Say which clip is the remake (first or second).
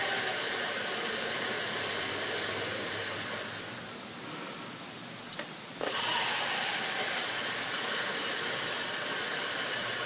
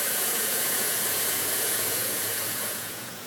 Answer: second